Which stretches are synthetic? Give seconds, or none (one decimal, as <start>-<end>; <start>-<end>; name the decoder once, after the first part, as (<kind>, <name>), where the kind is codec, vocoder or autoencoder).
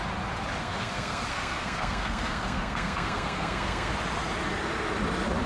0.6-3.9 (codec, SNAC)